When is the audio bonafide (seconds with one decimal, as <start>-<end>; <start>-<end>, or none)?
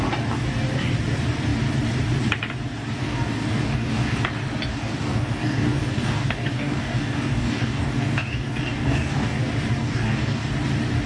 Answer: 0.0-3.0; 4.2-4.7; 9.4-9.8; 10.5-11.1